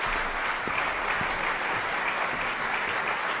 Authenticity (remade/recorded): recorded